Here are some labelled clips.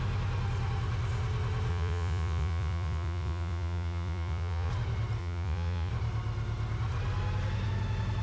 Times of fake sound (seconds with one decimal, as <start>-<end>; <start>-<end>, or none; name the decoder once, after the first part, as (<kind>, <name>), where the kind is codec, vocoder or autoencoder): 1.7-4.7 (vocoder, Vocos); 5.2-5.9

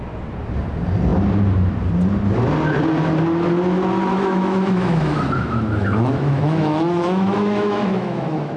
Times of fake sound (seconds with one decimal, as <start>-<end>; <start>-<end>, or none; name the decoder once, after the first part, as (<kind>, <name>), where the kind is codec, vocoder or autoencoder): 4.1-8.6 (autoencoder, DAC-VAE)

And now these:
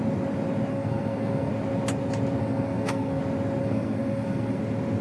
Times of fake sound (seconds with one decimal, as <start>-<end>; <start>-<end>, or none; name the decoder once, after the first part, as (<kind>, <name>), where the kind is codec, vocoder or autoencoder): 0.7-1.5 (codec, SNAC); 2.4-3.2; 3.6-4.6